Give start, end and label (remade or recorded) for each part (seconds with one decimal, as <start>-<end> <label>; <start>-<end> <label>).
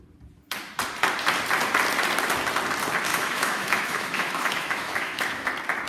0.0-3.1 recorded; 3.1-5.5 remade; 5.5-5.9 recorded